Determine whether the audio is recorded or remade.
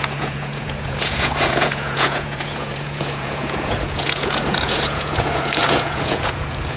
remade